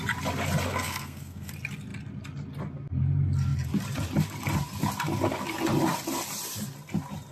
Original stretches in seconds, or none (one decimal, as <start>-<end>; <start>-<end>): 0.0-0.7; 1.5-7.3